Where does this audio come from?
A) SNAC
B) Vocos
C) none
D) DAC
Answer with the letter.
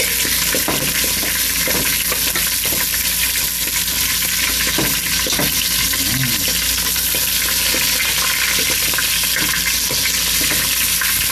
C